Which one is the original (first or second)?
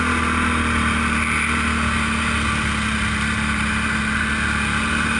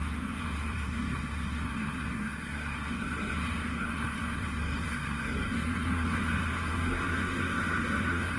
first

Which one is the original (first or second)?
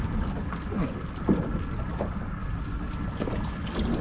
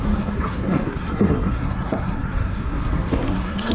first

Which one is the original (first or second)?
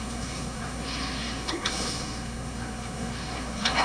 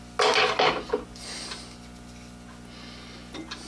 second